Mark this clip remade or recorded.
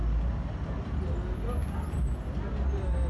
recorded